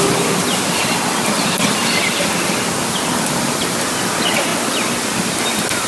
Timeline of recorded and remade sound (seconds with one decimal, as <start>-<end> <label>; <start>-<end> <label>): 0.0-5.9 recorded